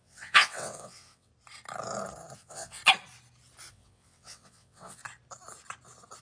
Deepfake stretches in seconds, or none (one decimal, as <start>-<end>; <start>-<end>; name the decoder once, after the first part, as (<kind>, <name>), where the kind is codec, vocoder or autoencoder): 0.0-1.3 (vocoder, WaveNeXt); 2.4-2.8; 3.7-5.0